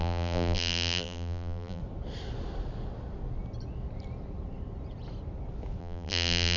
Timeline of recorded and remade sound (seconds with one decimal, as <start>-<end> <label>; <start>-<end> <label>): 0.0-1.8 remade; 1.8-5.8 recorded; 5.8-6.6 remade